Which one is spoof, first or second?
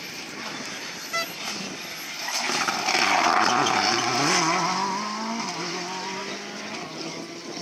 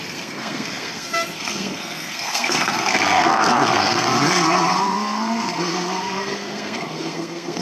second